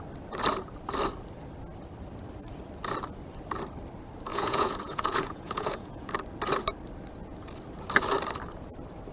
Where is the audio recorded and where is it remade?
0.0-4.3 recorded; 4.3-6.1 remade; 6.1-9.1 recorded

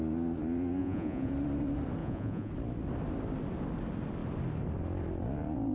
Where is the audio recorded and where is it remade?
0.0-0.8 recorded; 0.8-1.3 remade; 1.3-2.0 recorded; 2.0-2.5 remade; 2.5-5.7 recorded

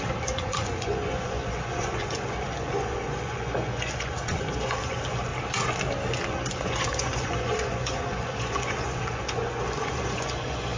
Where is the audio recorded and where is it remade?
0.0-5.3 remade; 5.3-6.3 recorded; 6.3-10.8 remade

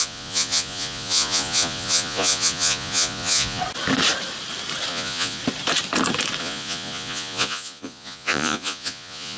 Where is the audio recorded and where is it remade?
0.0-3.6 remade; 3.6-4.9 recorded; 4.9-5.4 remade; 5.4-6.4 recorded; 6.4-9.4 remade

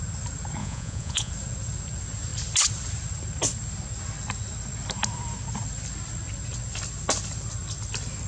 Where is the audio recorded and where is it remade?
0.0-0.6 recorded; 0.6-1.3 remade; 1.3-8.3 recorded

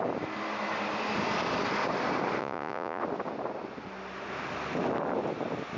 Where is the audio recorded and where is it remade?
0.0-2.4 recorded; 2.4-3.0 remade; 3.0-5.8 recorded

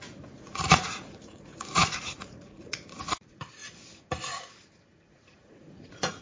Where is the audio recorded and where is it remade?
0.0-3.6 remade; 3.6-5.1 recorded; 5.1-6.2 remade

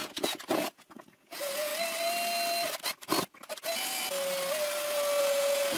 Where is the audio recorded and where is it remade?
0.0-1.7 remade; 1.7-5.2 recorded; 5.2-5.8 remade